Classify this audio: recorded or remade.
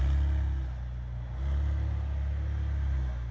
recorded